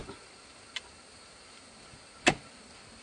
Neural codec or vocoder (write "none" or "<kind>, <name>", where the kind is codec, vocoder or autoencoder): none